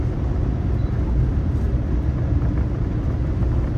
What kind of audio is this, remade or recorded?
recorded